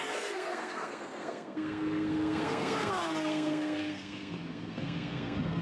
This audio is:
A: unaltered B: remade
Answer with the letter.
B